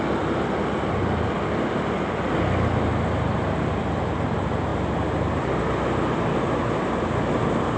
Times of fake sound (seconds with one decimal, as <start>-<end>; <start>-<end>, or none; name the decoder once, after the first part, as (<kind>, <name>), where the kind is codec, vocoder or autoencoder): none